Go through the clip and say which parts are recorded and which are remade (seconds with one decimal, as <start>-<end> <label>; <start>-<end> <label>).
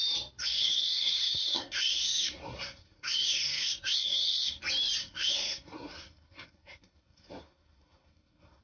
0.0-0.4 recorded; 0.4-4.6 remade; 4.6-5.0 recorded; 5.0-8.6 remade